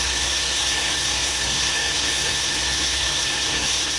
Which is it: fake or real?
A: fake